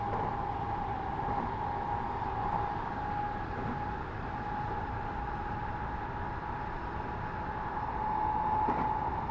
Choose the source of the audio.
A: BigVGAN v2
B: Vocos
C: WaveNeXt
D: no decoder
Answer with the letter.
D